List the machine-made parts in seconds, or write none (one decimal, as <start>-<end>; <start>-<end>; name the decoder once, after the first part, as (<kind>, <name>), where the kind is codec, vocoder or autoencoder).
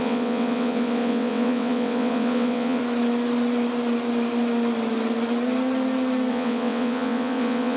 0.0-2.8 (vocoder, WaveNeXt); 6.3-7.8